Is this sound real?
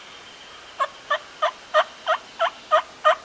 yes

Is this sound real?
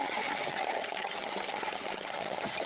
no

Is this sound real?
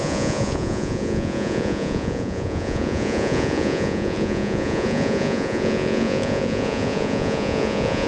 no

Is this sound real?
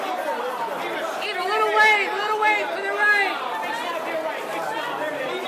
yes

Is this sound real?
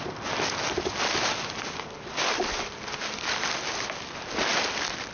yes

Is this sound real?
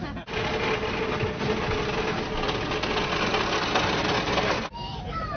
yes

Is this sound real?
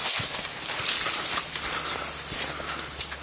yes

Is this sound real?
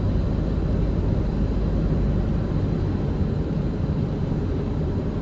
yes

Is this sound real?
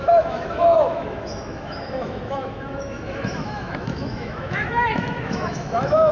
no